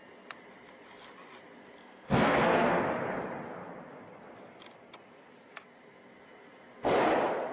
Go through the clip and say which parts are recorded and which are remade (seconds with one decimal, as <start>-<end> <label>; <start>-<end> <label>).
0.0-1.8 recorded; 1.8-2.8 remade; 2.8-7.5 recorded